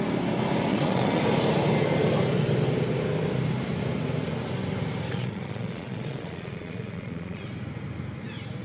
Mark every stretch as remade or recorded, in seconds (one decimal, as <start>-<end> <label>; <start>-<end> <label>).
0.0-0.7 recorded; 0.7-1.2 remade; 1.2-5.1 recorded; 5.1-7.5 remade; 7.5-8.6 recorded